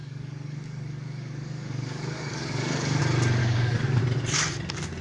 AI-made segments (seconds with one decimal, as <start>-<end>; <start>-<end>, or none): 0.0-3.0; 3.4-4.0